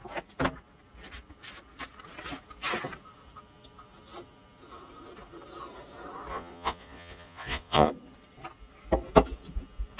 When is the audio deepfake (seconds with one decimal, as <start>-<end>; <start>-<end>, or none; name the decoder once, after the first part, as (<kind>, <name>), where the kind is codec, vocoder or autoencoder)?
6.3-7.9 (vocoder, Vocos)